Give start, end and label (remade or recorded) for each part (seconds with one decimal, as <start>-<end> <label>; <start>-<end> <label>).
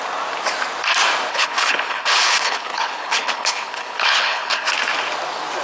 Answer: 0.0-1.3 recorded; 1.3-4.7 remade; 4.7-5.6 recorded